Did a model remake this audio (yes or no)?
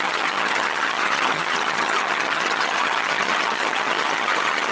yes